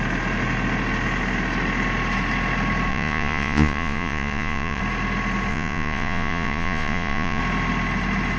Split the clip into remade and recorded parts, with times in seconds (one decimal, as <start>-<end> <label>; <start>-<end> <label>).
0.0-2.9 recorded; 2.9-4.8 remade; 4.8-5.5 recorded; 5.5-7.4 remade; 7.4-8.4 recorded